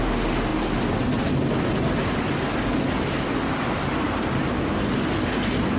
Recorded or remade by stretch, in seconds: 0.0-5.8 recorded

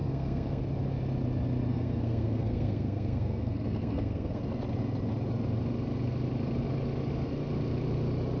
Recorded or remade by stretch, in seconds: 0.0-0.6 remade; 0.6-1.7 recorded; 1.7-4.4 remade; 4.4-8.4 recorded

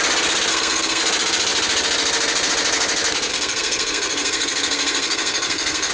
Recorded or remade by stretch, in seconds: 0.0-0.5 recorded; 0.5-1.0 remade; 1.0-3.3 recorded; 3.3-5.9 remade

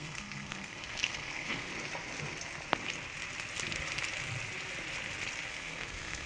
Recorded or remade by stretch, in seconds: 0.0-1.7 remade; 1.7-5.5 recorded; 5.5-6.3 remade

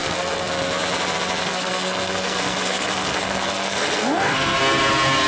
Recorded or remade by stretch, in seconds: 0.0-0.5 remade; 0.5-1.4 recorded; 1.4-4.6 remade; 4.6-5.3 recorded

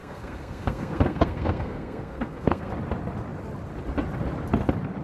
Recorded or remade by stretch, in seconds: 0.0-2.7 remade; 2.7-5.0 recorded

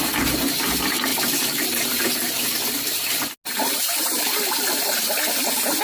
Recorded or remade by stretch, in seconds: 0.0-5.8 recorded